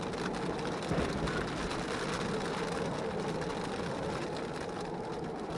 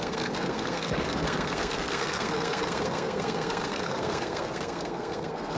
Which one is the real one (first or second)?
first